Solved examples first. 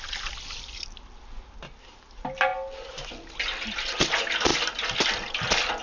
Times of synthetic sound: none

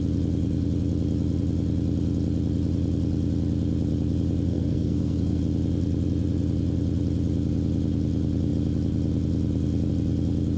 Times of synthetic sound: 4.5-5.4 (codec, SNAC)